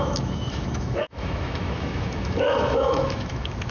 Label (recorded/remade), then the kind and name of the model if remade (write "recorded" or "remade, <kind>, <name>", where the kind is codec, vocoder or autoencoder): remade, autoencoder, DAC-VAE